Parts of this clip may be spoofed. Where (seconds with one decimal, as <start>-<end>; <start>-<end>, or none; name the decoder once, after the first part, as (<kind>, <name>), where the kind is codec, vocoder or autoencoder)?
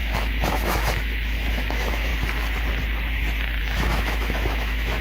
0.0-2.1 (autoencoder, DAC-VAE); 3.6-5.0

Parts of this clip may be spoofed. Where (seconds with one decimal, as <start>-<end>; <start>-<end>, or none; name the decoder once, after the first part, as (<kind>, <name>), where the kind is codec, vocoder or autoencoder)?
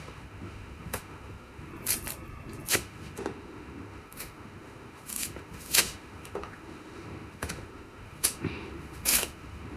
0.0-1.7 (autoencoder, DAC-VAE); 2.7-9.8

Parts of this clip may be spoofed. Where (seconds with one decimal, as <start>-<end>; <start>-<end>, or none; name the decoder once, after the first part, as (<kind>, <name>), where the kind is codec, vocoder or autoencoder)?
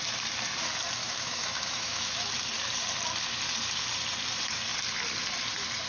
1.0-2.3 (autoencoder, DAC-VAE)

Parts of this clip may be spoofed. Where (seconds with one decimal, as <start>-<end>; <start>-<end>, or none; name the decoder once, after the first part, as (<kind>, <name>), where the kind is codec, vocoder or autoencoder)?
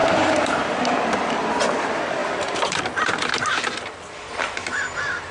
0.0-0.8 (vocoder, BigVGAN v2); 2.2-2.8